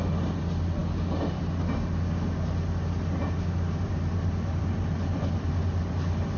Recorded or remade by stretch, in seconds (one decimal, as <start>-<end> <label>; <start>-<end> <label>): 0.0-6.4 recorded